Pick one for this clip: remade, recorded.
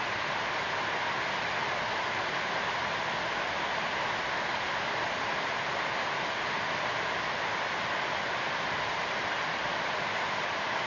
recorded